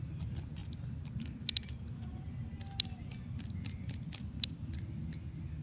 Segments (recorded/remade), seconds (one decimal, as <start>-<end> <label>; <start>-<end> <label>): 0.0-5.6 recorded